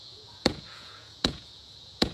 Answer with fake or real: fake